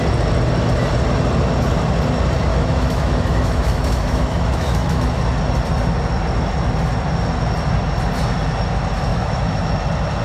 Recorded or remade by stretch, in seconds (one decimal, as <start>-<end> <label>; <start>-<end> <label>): 0.0-2.5 recorded; 2.5-5.2 remade; 5.2-9.1 recorded; 9.1-9.7 remade; 9.7-10.2 recorded